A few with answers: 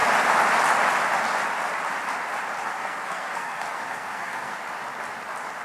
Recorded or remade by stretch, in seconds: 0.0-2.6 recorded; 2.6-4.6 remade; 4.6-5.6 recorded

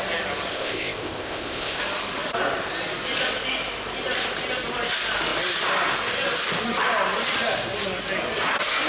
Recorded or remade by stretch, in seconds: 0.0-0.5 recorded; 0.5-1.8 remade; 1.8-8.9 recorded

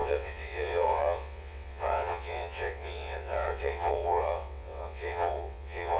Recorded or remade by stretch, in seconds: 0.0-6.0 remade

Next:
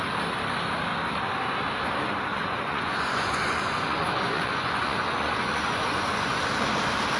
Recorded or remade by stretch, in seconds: 0.0-2.3 recorded; 2.3-6.4 remade; 6.4-7.2 recorded

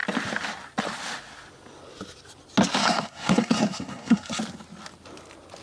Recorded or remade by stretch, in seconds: 0.0-2.8 recorded; 2.8-4.4 remade; 4.4-5.6 recorded

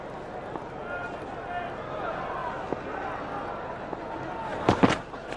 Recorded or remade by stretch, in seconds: 0.0-5.4 recorded

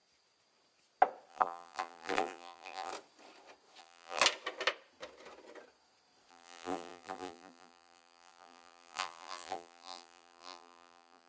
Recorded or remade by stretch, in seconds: 0.0-1.3 recorded; 1.3-2.9 remade; 2.9-3.8 recorded; 3.8-4.2 remade; 4.2-6.3 recorded; 6.3-11.3 remade